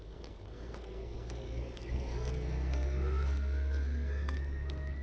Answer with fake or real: fake